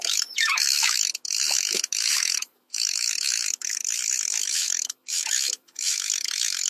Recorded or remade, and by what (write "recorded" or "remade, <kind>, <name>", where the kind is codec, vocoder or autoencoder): remade, autoencoder, DAC-VAE